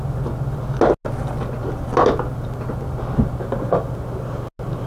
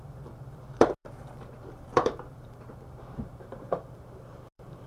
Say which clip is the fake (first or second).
second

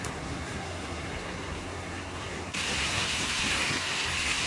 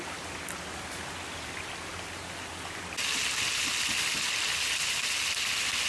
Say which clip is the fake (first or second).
first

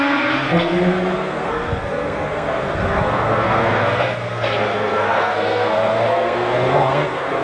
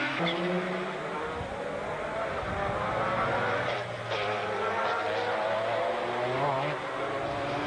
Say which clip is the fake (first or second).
first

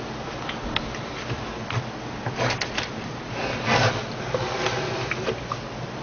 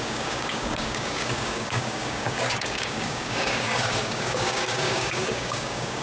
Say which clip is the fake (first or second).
second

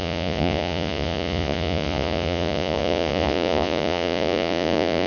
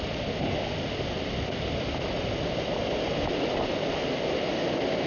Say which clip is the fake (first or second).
first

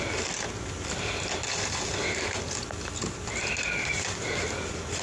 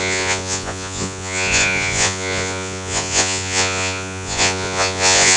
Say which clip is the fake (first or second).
second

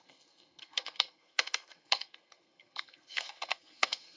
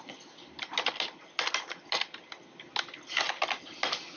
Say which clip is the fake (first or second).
first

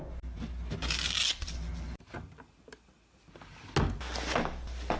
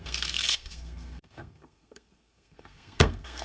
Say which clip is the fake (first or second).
second